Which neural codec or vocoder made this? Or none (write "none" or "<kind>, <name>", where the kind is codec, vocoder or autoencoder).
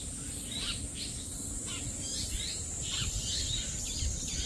none